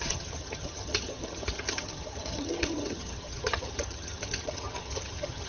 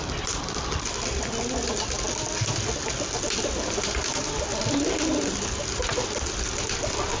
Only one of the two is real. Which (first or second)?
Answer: second